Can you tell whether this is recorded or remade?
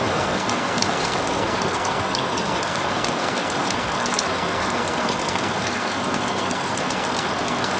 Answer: remade